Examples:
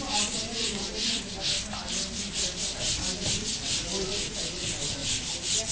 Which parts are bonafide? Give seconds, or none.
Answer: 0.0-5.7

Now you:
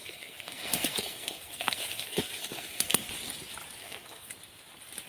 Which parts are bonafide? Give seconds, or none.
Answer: 3.1-3.8; 4.3-5.1

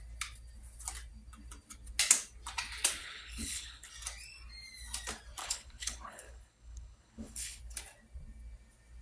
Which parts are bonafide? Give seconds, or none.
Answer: 0.0-3.0; 3.9-5.4; 7.6-9.0

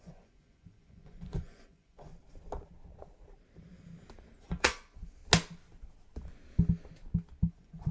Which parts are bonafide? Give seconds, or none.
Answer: 2.1-4.4; 5.2-7.5

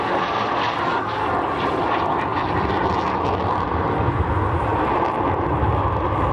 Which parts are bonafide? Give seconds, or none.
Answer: 0.0-6.3

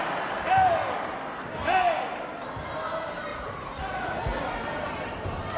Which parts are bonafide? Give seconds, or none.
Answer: 0.0-3.3; 4.6-5.6

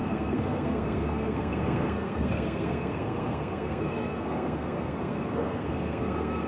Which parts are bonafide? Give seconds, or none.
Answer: none

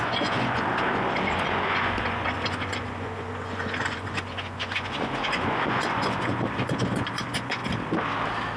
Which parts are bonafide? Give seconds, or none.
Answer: 7.6-8.6